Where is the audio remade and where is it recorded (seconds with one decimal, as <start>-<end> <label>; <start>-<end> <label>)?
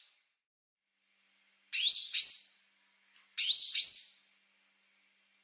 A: 0.0-5.4 recorded